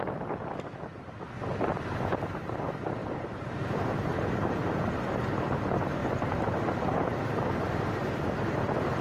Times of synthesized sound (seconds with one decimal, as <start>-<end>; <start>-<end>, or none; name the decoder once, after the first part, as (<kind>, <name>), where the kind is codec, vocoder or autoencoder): 3.0-4.2 (vocoder, BigVGAN v2); 6.0-8.3